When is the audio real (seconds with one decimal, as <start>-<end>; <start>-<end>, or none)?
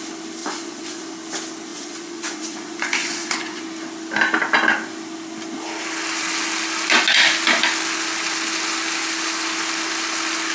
0.0-0.4; 1.0-1.7; 3.6-10.5